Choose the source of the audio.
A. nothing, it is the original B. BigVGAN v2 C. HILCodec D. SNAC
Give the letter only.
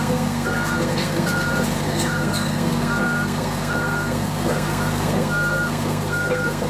D